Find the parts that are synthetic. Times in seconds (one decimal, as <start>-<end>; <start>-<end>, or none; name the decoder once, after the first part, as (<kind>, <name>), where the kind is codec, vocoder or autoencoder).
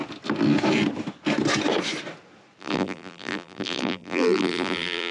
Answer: 2.6-5.1 (vocoder, BigVGAN v2)